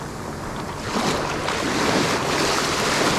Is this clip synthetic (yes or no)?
no